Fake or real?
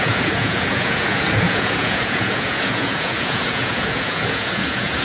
fake